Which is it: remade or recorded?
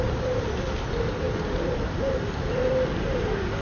recorded